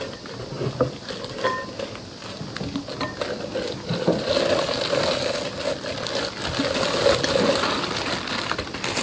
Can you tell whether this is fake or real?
real